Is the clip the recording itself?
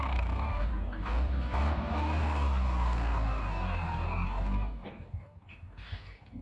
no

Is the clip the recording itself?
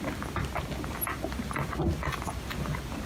yes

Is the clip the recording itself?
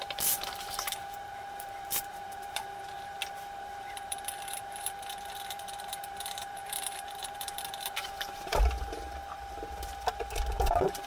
no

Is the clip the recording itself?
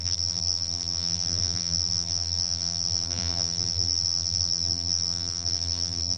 no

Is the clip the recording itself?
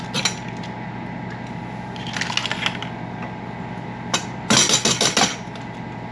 yes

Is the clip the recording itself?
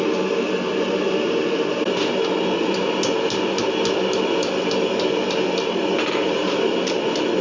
yes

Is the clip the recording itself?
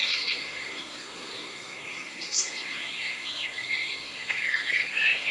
no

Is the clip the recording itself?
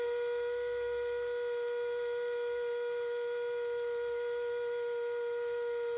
yes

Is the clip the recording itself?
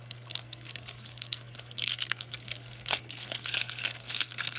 no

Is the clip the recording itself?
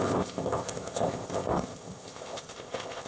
no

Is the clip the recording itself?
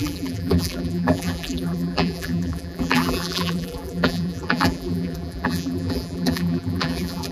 no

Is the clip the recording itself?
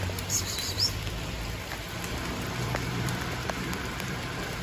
no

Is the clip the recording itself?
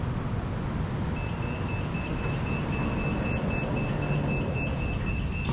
yes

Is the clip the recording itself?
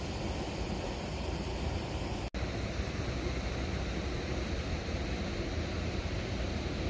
yes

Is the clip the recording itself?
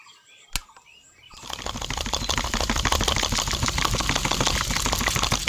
yes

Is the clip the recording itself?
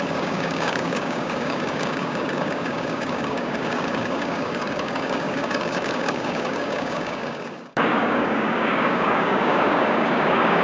no